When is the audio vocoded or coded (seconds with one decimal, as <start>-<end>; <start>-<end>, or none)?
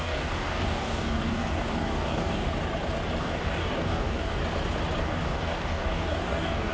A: 0.0-2.5; 3.2-4.4; 5.0-6.7